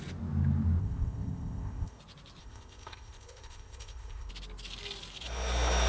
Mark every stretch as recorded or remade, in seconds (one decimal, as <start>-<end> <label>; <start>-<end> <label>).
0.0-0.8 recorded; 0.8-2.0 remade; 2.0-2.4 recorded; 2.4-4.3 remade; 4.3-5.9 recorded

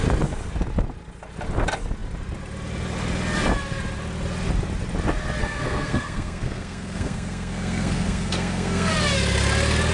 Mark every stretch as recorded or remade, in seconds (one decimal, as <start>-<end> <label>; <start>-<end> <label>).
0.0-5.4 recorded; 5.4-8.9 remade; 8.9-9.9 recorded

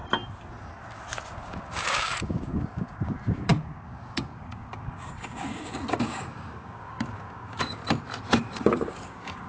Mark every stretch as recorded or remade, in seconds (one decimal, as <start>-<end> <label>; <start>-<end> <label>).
0.0-1.3 recorded; 1.3-7.8 remade; 7.8-8.3 recorded; 8.3-9.5 remade

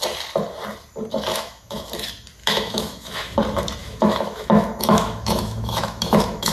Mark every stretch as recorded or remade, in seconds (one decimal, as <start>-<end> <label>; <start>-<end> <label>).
0.0-1.3 recorded; 1.3-1.9 remade; 1.9-2.4 recorded; 2.4-3.4 remade; 3.4-3.8 recorded; 3.8-6.5 remade

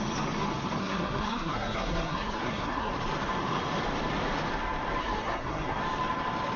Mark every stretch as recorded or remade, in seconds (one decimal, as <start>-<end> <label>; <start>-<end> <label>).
0.0-0.8 recorded; 0.8-2.9 remade; 2.9-5.0 recorded; 5.0-5.8 remade; 5.8-6.6 recorded

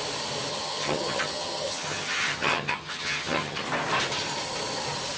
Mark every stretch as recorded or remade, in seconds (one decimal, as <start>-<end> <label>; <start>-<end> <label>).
0.0-0.5 recorded; 0.5-3.6 remade; 3.6-5.2 recorded